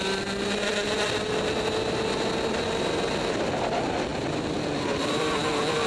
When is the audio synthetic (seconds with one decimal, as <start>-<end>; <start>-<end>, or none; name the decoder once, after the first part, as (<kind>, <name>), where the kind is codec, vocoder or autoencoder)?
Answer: 4.1-5.3 (vocoder, BigVGAN v2)